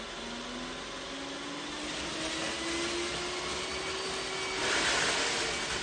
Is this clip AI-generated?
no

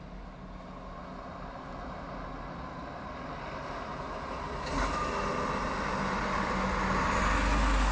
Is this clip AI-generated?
no